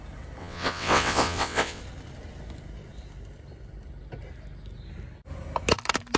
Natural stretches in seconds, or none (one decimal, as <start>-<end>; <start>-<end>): 0.0-0.4; 1.8-6.2